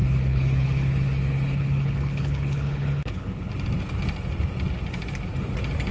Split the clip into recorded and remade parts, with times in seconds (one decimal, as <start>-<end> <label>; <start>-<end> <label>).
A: 0.0-3.5 remade; 3.5-5.9 recorded